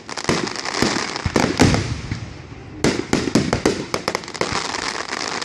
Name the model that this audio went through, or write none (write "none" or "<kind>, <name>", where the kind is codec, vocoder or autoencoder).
none